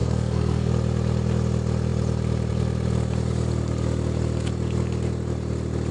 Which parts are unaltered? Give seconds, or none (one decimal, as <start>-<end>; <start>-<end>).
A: 0.7-5.9